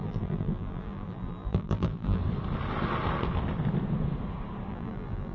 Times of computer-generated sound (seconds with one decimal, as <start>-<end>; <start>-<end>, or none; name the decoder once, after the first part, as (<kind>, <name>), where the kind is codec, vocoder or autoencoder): 0.0-2.2 (vocoder, BigVGAN v2); 4.7-5.3